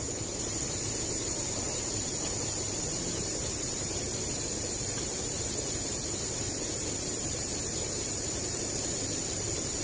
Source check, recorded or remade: remade